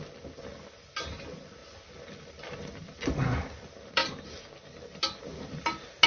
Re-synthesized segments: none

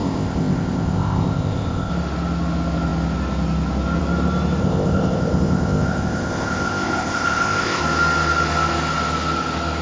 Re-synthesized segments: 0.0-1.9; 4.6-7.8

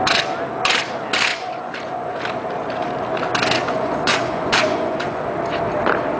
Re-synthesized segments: 1.3-2.2; 3.6-5.3

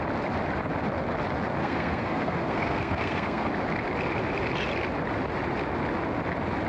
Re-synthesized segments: 1.6-3.5

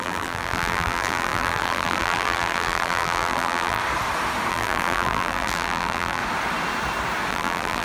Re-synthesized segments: 0.0-3.8; 4.5-6.2; 7.3-7.8

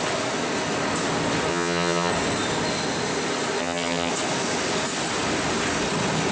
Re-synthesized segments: 1.5-2.1; 3.6-4.1

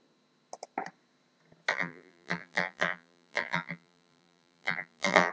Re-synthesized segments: 1.7-5.3

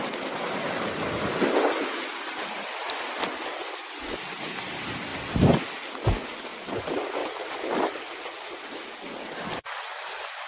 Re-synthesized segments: none